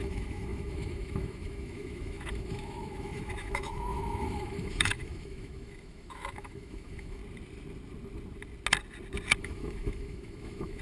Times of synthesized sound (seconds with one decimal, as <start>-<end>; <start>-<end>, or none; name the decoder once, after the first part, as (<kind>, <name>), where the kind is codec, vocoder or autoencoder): 0.0-7.2 (autoencoder, DAC-VAE); 9.4-10.8